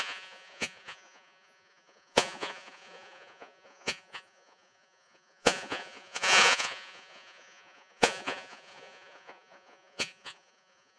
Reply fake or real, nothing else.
fake